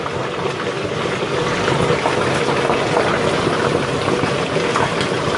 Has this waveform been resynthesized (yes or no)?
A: no